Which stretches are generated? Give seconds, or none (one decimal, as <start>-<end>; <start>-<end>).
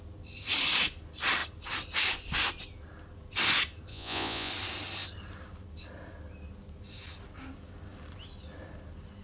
3.9-4.5